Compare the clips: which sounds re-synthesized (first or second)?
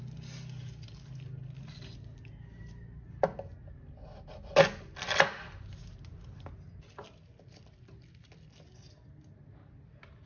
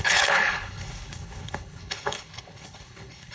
second